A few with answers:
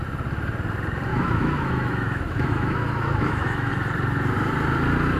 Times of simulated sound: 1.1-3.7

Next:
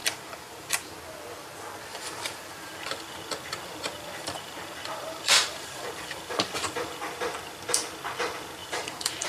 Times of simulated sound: 0.0-0.9; 1.9-7.0; 8.6-9.3

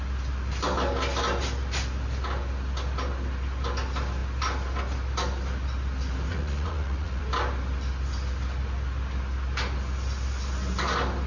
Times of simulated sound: 6.3-7.2